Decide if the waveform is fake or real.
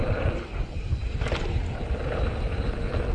real